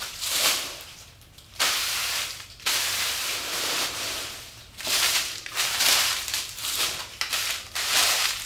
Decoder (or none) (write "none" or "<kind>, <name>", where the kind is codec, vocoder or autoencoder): vocoder, BigVGAN v2